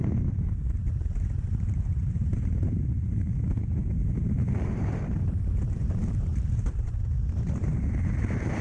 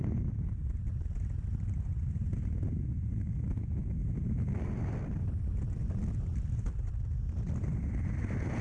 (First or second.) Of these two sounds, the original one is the second